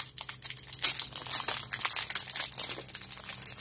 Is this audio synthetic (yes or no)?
no